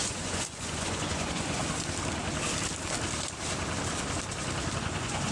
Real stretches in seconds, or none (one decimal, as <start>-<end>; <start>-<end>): 1.6-4.8